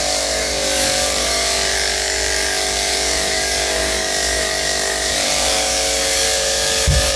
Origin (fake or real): fake